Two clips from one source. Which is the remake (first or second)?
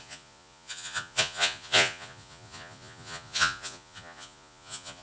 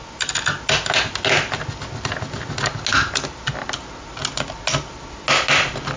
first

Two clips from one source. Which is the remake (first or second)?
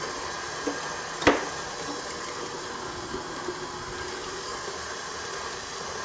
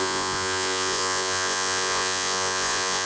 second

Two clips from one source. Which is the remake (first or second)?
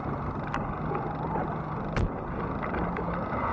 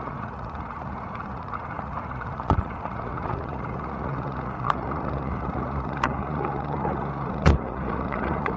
second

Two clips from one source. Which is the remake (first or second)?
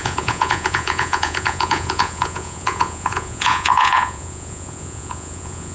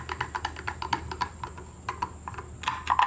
first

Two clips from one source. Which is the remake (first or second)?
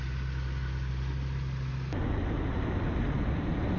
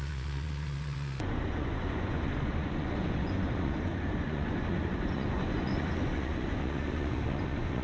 second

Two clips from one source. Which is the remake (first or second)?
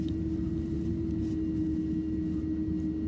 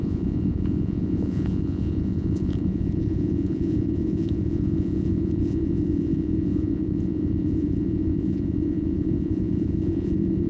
second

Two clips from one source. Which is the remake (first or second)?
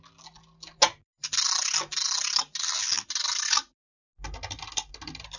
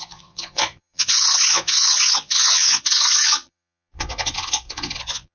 second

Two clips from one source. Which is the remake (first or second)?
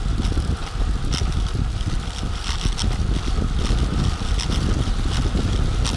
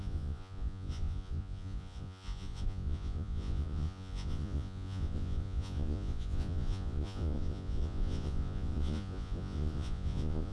second